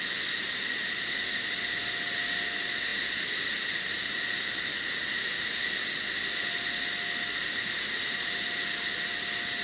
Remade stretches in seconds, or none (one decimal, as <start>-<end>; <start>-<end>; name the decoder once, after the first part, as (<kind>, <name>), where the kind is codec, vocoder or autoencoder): none